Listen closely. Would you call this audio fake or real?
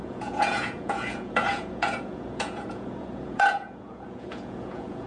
fake